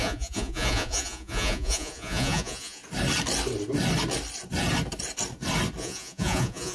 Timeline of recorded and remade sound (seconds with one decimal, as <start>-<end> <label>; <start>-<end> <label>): 0.0-2.8 remade; 2.8-5.8 recorded; 5.8-6.7 remade